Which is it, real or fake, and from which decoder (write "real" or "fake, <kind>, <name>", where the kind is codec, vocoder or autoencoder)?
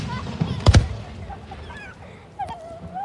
real